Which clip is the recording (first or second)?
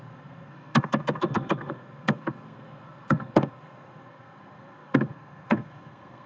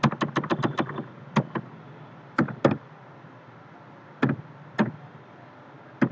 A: second